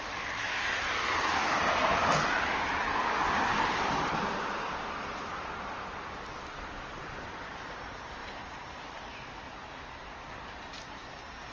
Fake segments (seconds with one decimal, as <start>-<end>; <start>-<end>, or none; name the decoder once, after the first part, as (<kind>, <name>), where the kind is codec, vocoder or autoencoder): 0.0-8.2 (vocoder, BigVGAN v2)